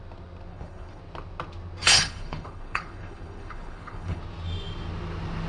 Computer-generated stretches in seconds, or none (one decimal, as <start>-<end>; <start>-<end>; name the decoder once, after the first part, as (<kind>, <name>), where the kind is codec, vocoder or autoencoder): 0.5-1.0 (codec, HILCodec); 1.8-4.2